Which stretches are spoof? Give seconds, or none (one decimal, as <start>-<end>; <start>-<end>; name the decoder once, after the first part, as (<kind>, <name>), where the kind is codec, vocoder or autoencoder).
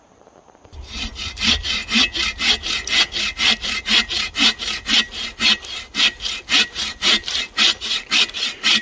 0.0-1.8 (vocoder, BigVGAN v2); 3.8-8.8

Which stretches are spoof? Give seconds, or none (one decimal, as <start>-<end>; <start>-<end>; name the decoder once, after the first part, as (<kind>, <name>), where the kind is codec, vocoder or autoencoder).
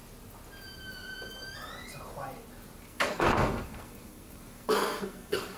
2.8-5.6 (codec, SNAC)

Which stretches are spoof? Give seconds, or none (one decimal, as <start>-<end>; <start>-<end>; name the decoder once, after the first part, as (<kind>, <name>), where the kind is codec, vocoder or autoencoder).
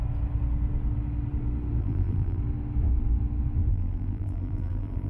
1.8-2.4 (vocoder, BigVGAN v2); 3.7-5.1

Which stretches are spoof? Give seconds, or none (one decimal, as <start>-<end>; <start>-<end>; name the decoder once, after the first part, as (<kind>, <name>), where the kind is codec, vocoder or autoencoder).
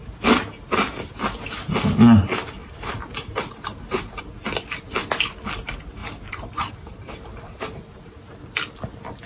2.6-4.2 (vocoder, BigVGAN v2); 6.0-8.4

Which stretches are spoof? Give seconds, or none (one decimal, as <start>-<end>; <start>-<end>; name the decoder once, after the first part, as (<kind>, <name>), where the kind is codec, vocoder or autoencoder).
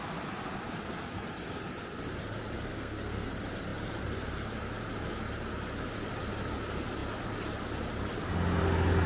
2.7-3.3 (codec, SNAC)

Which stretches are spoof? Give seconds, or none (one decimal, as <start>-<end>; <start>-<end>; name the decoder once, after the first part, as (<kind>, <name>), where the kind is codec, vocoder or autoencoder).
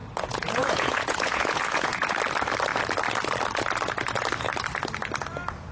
0.0-2.1 (vocoder, Vocos)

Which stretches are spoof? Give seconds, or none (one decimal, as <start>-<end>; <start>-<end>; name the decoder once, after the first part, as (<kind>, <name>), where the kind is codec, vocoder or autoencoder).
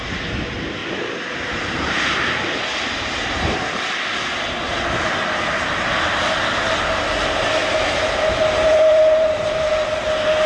0.8-3.8 (vocoder, BigVGAN v2); 7.6-9.7